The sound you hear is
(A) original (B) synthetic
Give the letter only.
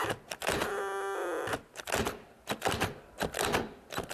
A